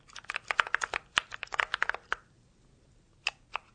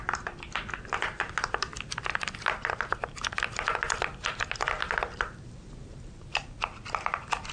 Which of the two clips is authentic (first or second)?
first